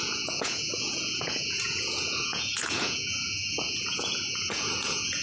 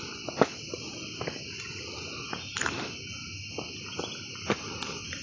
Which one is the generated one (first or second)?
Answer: first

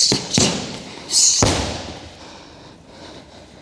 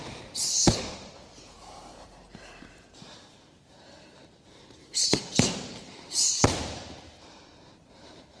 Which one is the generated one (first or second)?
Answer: second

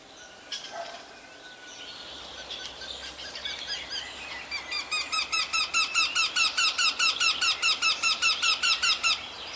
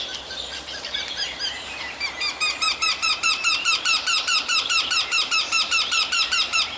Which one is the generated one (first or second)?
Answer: second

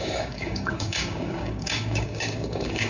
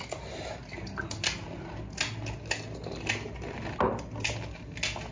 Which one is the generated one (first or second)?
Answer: first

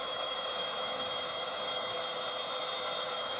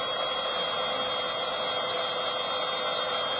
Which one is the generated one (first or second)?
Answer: first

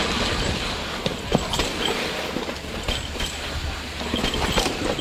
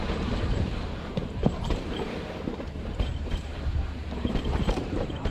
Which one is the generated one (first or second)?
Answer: second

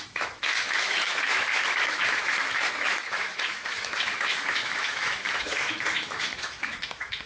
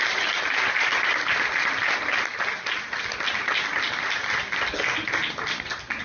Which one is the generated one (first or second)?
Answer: first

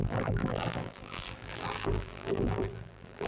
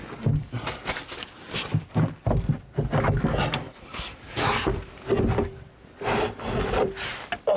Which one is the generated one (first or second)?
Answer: first